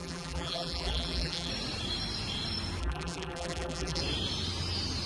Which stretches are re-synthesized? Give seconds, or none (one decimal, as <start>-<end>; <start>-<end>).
0.0-1.5; 2.8-4.0